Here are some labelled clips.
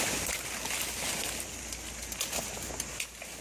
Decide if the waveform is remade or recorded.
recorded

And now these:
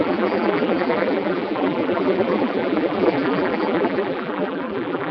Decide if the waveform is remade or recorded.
remade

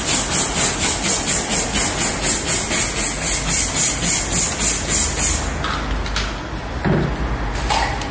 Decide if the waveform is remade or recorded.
recorded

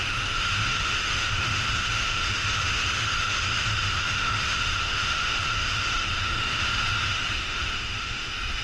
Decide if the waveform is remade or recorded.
remade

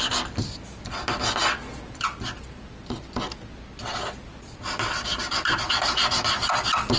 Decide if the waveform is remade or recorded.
recorded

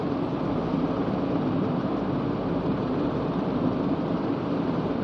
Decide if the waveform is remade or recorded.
remade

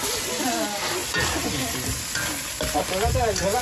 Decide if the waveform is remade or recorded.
recorded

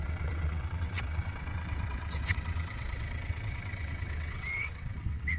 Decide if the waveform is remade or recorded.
remade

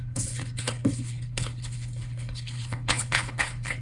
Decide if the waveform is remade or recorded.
remade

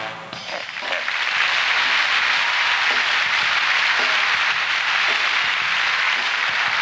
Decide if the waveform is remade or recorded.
recorded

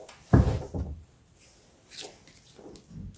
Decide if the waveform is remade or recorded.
recorded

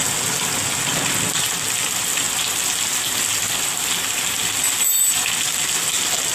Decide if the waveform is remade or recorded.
recorded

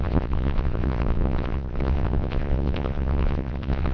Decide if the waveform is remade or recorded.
remade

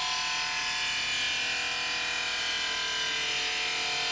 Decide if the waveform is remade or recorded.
recorded